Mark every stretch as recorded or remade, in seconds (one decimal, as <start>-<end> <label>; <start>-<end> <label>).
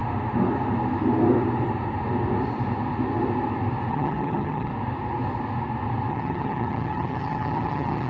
0.0-3.9 recorded; 3.9-4.7 remade; 4.7-6.1 recorded; 6.1-8.1 remade